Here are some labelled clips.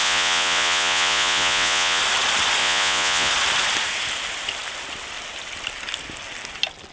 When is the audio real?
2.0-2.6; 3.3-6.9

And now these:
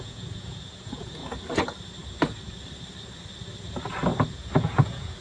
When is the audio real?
1.2-4.3

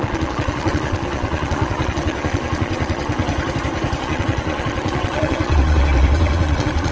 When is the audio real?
3.3-4.0

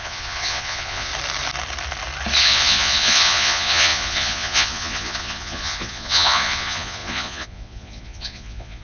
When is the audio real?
1.1-2.4